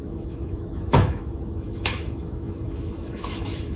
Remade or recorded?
remade